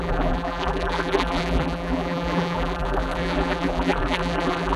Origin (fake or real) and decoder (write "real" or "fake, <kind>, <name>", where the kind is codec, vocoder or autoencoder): fake, vocoder, BigVGAN v2